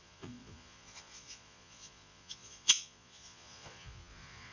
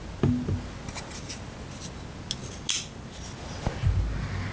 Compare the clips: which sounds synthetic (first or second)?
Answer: first